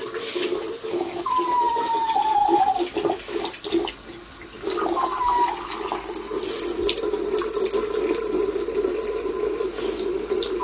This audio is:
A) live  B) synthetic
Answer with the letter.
A